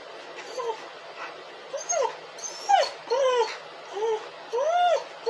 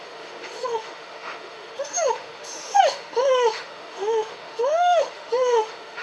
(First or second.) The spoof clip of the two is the second